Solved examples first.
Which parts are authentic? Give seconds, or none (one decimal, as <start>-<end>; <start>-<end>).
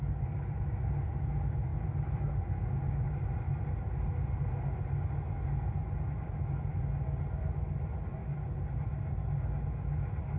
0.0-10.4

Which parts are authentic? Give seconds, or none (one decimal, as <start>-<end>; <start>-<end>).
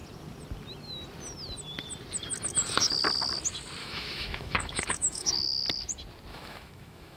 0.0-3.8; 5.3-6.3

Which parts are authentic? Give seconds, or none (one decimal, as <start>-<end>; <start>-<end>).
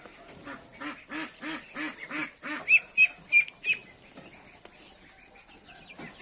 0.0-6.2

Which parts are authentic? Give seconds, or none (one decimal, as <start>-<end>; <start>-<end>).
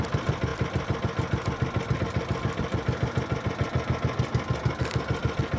0.0-5.6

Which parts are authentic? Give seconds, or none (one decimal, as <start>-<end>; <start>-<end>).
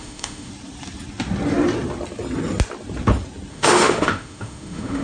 0.5-3.5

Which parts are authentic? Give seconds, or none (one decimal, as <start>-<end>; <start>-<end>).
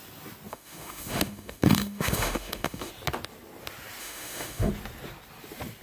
0.0-0.5; 2.9-4.0; 4.7-5.8